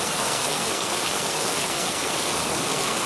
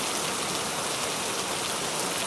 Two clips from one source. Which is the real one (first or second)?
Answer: second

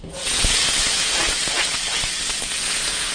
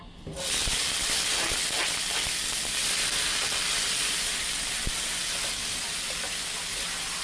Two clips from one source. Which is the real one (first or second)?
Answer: second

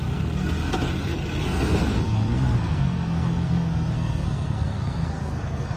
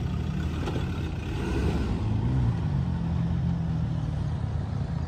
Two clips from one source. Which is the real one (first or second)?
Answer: second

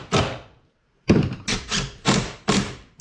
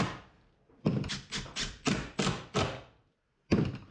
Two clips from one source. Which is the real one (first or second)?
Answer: second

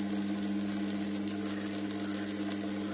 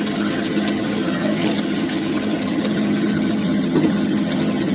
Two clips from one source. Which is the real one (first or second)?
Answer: first